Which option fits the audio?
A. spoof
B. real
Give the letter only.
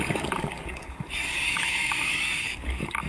A